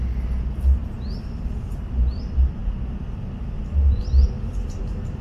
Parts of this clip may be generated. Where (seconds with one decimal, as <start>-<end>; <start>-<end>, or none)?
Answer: none